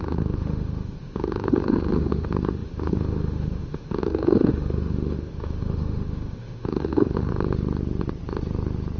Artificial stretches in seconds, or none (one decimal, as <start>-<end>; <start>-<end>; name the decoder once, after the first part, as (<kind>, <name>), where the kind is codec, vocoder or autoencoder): 0.0-7.3 (autoencoder, DAC-VAE)